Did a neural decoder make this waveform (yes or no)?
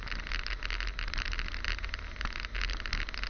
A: no